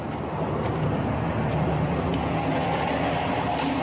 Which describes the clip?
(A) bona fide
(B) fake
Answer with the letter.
A